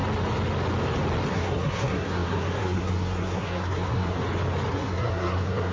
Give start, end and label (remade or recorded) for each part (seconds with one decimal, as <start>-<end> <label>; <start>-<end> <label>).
0.0-1.3 recorded; 1.3-4.2 remade; 4.2-4.7 recorded; 4.7-5.7 remade